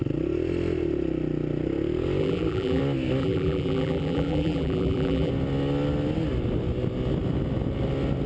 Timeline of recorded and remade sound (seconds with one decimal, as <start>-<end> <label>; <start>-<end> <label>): 0.0-2.2 recorded; 2.2-2.8 remade; 2.8-3.2 recorded; 3.2-5.3 remade; 5.3-8.3 recorded